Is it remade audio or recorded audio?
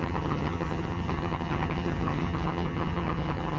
remade